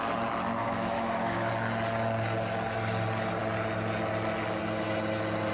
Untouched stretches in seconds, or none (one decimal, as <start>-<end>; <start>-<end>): 0.0-0.6; 1.5-5.5